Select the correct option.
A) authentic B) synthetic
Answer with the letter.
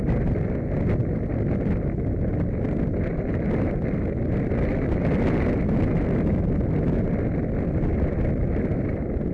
A